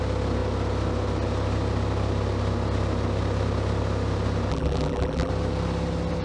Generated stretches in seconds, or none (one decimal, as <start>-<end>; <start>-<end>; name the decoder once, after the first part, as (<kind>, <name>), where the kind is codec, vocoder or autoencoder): 4.5-5.3 (vocoder, BigVGAN v2)

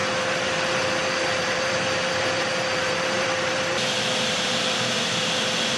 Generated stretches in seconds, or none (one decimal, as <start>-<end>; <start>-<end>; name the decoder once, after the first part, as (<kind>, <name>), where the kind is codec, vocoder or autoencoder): 1.0-4.5 (vocoder, BigVGAN v2)

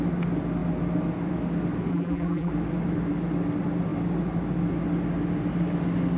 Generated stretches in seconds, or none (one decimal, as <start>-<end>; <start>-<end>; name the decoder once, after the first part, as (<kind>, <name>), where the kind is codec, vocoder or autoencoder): 1.9-2.5 (vocoder, BigVGAN v2)